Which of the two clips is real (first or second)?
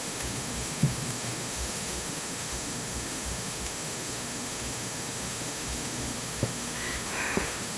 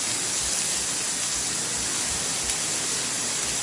second